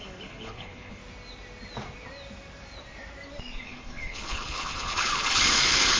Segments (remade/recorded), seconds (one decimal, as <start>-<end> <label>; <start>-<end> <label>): 0.0-1.0 remade; 1.0-3.6 recorded; 3.6-6.0 remade